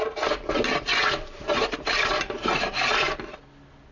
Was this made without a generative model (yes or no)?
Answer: yes